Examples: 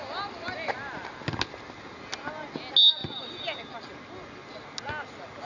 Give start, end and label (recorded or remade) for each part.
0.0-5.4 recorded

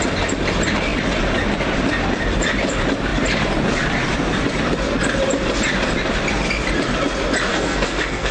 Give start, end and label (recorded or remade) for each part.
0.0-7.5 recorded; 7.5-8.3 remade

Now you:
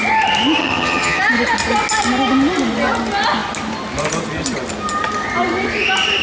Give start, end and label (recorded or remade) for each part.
0.0-0.6 recorded; 0.6-1.2 remade; 1.2-6.2 recorded

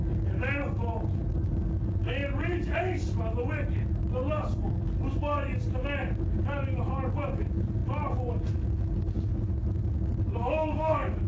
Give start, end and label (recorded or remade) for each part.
0.0-10.4 recorded; 10.4-11.3 remade

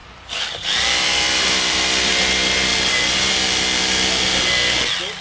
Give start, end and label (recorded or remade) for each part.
0.0-2.1 remade; 2.1-5.2 recorded

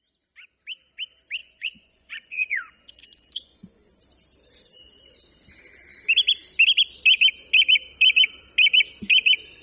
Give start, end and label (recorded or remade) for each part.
0.0-1.4 recorded; 1.4-4.0 remade; 4.0-9.6 recorded

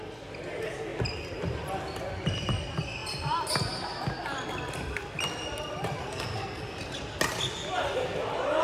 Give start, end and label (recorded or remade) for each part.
0.0-6.0 recorded; 6.0-6.6 remade; 6.6-8.6 recorded